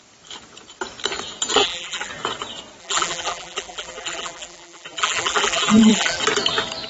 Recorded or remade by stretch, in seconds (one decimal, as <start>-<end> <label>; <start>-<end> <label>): 0.0-1.6 recorded; 1.6-2.1 remade; 2.1-2.8 recorded; 2.8-6.2 remade; 6.2-6.9 recorded